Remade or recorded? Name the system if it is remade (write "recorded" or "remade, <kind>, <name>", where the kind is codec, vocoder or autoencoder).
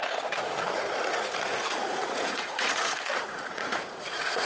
remade, vocoder, Vocos